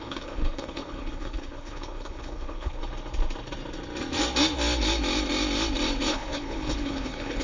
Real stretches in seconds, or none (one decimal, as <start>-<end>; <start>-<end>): 2.8-6.1